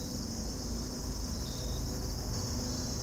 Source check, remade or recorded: recorded